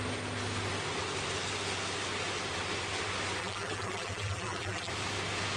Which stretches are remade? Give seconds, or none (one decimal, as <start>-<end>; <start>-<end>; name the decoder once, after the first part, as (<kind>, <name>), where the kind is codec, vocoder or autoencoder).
3.4-4.9 (vocoder, BigVGAN v2)